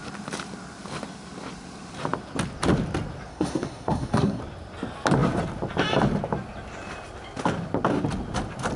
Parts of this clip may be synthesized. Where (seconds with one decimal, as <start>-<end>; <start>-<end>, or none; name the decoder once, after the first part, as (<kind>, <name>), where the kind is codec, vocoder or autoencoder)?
3.3-4.4 (codec, SNAC)